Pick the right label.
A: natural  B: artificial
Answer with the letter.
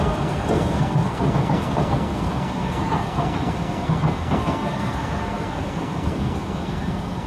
B